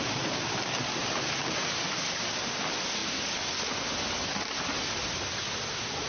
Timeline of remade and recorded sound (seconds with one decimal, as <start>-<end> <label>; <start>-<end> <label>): 0.0-6.1 recorded